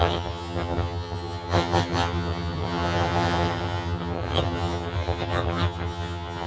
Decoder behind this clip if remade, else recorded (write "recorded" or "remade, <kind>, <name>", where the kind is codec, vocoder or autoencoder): remade, vocoder, HiFi-GAN